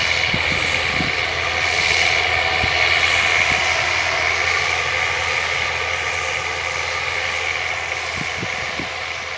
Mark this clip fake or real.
real